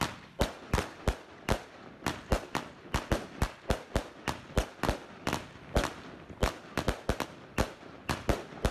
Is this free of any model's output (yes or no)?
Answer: yes